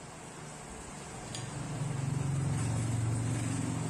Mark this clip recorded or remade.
recorded